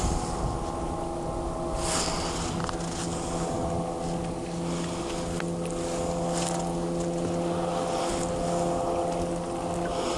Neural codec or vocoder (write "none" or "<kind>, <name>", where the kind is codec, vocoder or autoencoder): none